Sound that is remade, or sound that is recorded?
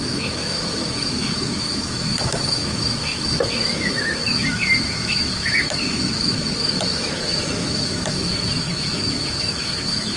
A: remade